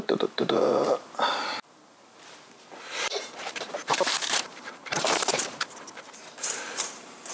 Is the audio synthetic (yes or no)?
yes